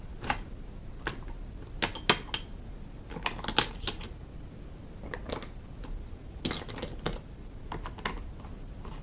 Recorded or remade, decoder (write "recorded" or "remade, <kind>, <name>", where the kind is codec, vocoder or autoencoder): recorded